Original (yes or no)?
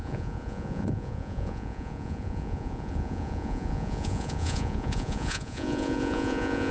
no